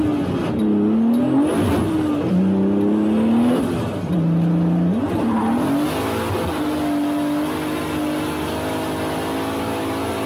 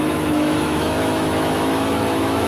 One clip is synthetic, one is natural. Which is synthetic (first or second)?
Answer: second